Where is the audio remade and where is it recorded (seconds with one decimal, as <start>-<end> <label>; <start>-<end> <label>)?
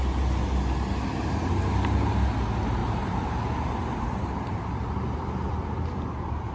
0.0-2.8 recorded; 2.8-6.5 remade